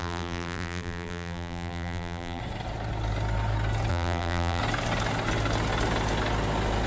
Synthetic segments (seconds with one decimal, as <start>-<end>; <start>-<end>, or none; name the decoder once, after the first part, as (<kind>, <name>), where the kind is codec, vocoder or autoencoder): 0.0-2.4 (vocoder, BigVGAN v2); 3.9-4.6

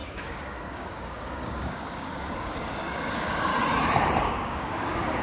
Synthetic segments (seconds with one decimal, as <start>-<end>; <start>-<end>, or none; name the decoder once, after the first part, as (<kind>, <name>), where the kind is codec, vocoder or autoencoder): 0.0-3.5 (codec, DAC); 4.2-5.2

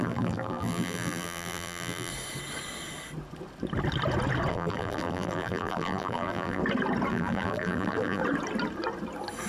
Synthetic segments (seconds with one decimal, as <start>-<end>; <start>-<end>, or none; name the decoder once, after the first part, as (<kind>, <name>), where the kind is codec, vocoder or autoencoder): 0.0-2.1 (vocoder, BigVGAN v2); 4.5-6.6; 7.1-8.2

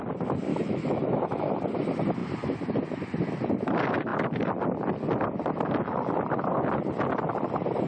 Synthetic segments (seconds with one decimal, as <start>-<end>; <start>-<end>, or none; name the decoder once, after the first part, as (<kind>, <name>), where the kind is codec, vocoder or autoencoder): 0.5-1.4 (autoencoder, DAC-VAE)

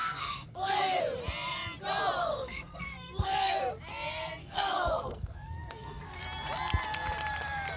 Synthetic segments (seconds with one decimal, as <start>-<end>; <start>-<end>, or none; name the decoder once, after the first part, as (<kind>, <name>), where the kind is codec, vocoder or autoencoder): 0.0-1.0 (codec, SNAC); 2.2-3.6; 4.4-6.2

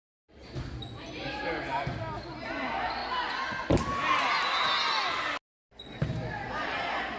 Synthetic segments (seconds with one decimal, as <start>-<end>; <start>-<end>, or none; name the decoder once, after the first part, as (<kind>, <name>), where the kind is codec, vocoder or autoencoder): none

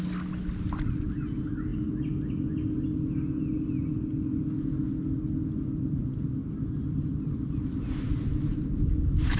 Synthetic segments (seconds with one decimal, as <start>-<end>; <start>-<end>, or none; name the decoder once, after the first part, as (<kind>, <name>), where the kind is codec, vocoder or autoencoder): none